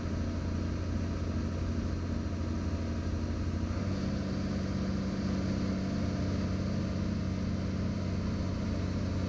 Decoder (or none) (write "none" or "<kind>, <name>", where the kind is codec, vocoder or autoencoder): none